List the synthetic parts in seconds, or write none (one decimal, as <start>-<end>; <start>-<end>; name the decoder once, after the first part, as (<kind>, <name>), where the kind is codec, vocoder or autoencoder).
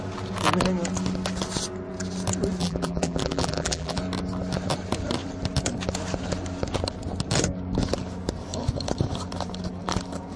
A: 2.6-4.0 (vocoder, BigVGAN v2)